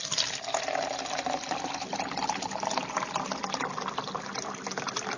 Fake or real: real